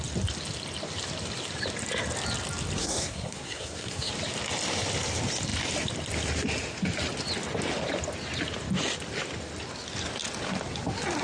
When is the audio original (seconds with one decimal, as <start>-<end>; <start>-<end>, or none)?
0.0-2.8; 4.1-11.2